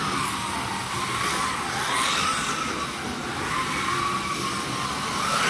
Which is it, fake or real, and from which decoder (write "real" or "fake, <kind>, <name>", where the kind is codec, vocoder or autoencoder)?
real